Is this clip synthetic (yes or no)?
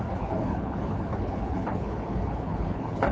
yes